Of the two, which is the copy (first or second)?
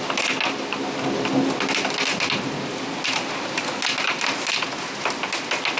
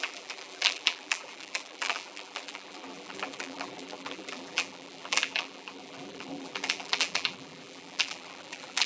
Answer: second